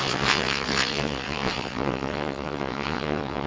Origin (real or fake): fake